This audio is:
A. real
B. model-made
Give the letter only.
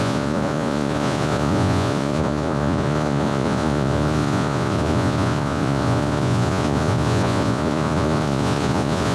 B